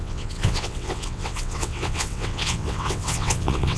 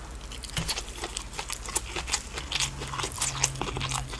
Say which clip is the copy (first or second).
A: first